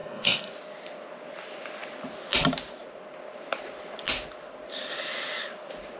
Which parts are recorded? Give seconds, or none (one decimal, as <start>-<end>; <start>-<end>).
0.5-6.0